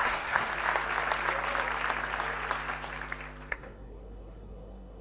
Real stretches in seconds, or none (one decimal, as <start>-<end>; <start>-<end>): 0.5-3.5